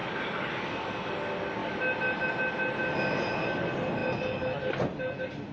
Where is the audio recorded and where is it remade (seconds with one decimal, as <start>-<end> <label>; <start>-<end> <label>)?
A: 0.0-1.6 recorded; 1.6-2.3 remade; 2.3-5.5 recorded